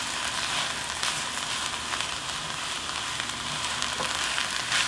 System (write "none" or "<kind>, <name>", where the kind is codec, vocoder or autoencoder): none